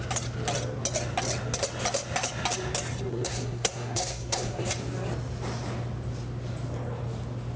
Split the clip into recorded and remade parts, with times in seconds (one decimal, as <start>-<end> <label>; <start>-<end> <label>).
0.0-3.1 recorded; 3.1-4.7 remade; 4.7-7.6 recorded